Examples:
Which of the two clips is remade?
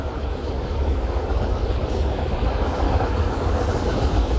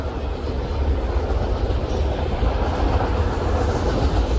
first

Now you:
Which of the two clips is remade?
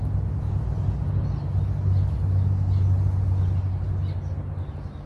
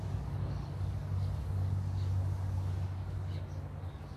second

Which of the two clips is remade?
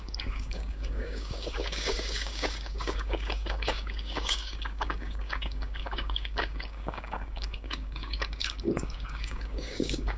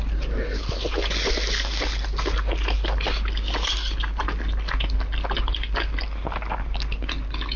first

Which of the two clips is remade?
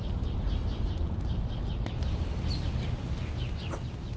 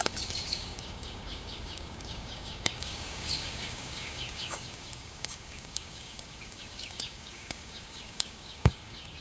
second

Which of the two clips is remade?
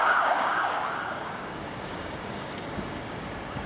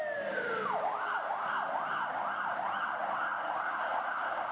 first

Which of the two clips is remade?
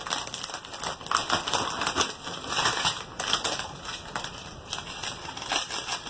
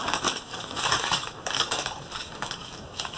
second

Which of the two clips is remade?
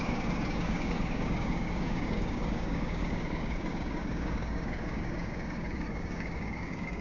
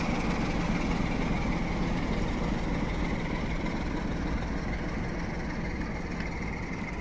first